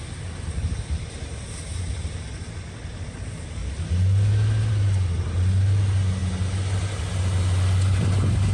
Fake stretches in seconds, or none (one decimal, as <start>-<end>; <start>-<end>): none